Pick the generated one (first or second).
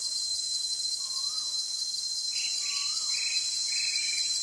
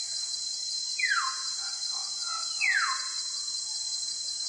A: second